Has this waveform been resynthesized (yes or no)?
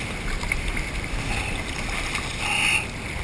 no